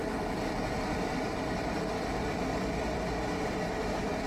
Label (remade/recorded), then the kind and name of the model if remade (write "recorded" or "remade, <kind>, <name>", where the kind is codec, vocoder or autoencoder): remade, vocoder, BigVGAN v2